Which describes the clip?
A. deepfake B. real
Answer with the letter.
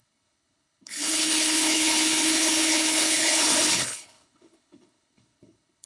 A